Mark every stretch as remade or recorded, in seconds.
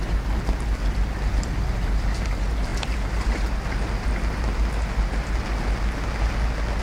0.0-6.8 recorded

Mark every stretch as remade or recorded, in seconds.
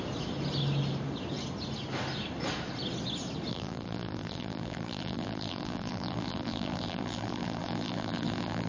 0.0-3.5 recorded; 3.5-8.7 remade